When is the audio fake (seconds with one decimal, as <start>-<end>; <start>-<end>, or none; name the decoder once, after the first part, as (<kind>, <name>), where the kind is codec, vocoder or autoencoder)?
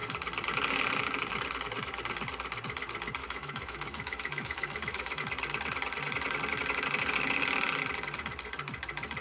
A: 3.2-5.2 (autoencoder, DAC-VAE)